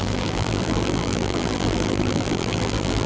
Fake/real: fake